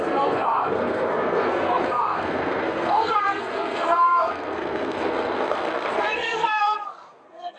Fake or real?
fake